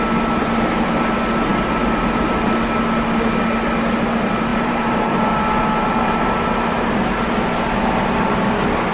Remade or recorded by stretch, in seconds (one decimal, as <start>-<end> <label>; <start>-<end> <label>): 0.0-4.5 recorded; 4.5-5.9 remade; 5.9-8.9 recorded